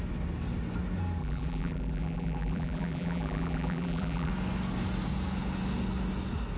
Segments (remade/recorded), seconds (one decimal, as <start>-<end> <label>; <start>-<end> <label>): 0.0-1.2 recorded; 1.2-4.3 remade; 4.3-6.6 recorded